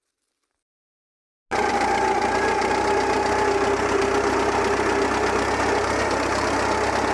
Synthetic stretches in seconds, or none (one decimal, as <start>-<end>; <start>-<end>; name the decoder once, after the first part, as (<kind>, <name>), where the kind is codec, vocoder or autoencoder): none